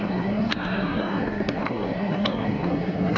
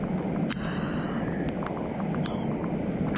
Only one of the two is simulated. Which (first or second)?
first